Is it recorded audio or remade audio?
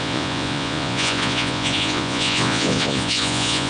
remade